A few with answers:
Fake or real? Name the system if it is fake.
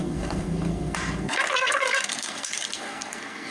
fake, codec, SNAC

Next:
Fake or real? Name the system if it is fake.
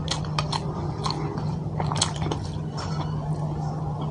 real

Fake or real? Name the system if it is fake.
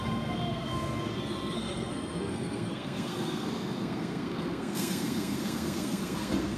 fake, codec, SNAC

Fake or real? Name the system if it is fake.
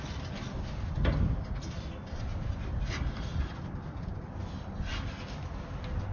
real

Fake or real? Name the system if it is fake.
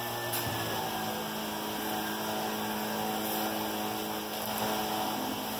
real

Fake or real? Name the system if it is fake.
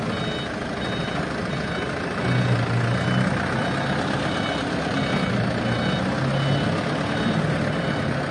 real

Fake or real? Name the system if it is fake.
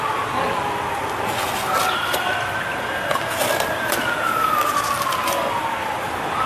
real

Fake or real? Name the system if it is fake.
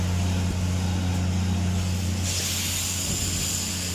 real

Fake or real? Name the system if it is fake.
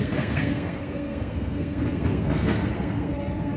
fake, codec, SNAC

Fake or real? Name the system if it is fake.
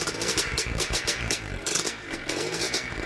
fake, codec, SNAC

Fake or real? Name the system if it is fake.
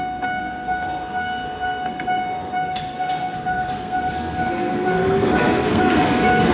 fake, codec, SNAC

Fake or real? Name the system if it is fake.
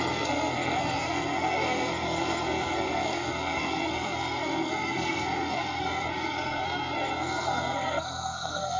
fake, codec, SNAC